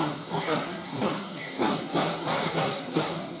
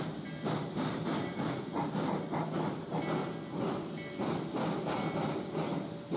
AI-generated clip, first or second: first